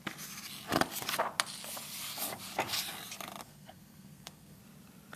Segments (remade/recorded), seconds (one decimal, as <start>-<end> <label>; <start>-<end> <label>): 0.0-3.4 recorded; 3.4-4.6 remade; 4.6-5.2 recorded